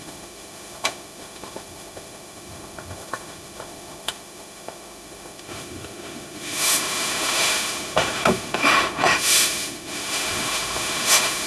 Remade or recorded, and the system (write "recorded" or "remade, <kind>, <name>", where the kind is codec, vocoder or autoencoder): remade, autoencoder, DAC-VAE